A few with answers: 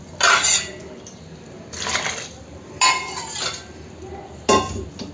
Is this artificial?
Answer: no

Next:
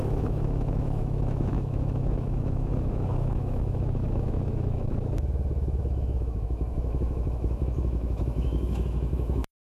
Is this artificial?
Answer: yes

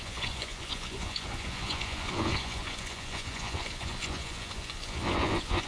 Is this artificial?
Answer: yes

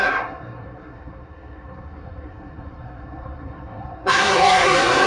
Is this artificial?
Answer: yes